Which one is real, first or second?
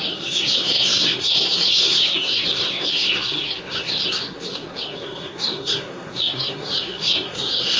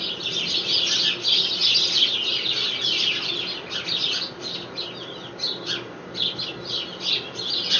second